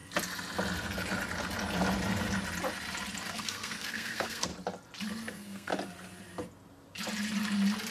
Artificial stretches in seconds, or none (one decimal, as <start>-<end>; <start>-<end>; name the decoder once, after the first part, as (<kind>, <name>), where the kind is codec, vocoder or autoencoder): 3.3-4.5 (codec, SNAC); 5.3-5.7